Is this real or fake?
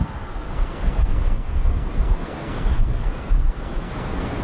fake